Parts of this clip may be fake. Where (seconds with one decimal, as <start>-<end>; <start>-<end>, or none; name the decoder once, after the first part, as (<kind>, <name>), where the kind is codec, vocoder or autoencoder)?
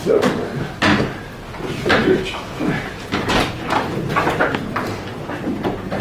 2.0-3.2 (autoencoder, DAC-VAE)